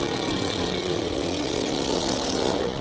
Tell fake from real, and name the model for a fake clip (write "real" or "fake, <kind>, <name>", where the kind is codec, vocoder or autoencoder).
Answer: fake, vocoder, WaveNeXt